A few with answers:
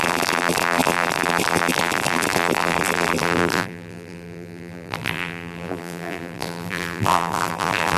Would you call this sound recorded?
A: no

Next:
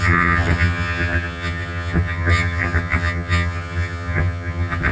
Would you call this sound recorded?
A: no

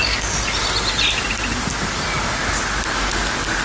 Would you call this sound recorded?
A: yes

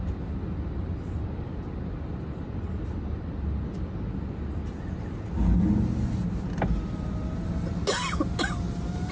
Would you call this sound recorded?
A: yes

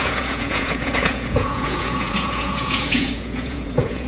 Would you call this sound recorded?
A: no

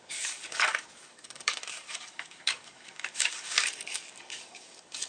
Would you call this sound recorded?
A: no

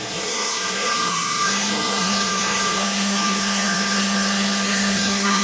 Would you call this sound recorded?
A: no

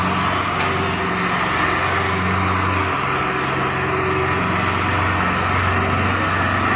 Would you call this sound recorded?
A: yes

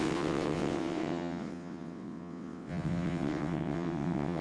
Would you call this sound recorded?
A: no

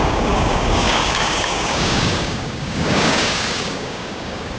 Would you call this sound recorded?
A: no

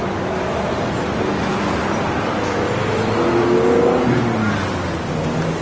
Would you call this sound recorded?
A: yes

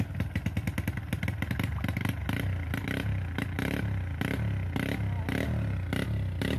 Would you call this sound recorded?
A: yes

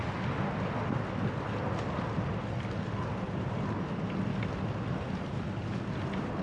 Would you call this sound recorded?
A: yes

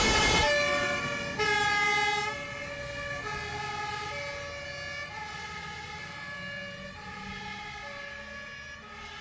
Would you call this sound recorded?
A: yes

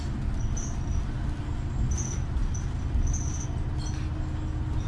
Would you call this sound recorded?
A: yes